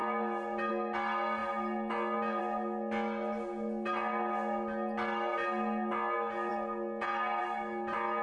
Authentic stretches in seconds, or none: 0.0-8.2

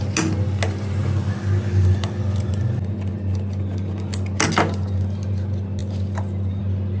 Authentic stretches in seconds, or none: 0.0-7.0

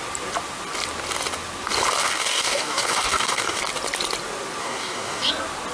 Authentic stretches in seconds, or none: 0.0-2.0; 3.6-4.6; 5.3-5.7

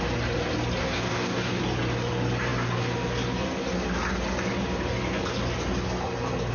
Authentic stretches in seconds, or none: 0.0-0.8; 1.6-6.5